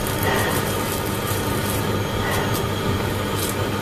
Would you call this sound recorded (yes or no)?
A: yes